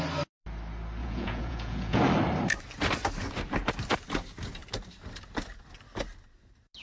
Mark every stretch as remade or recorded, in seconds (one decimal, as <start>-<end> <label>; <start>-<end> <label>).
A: 0.0-1.0 recorded; 1.0-2.0 remade; 2.0-6.8 recorded